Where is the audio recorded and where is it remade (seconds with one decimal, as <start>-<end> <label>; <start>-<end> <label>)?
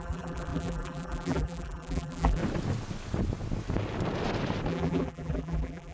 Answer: 0.0-2.4 remade; 2.4-4.7 recorded; 4.7-5.9 remade